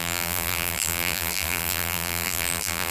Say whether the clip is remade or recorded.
remade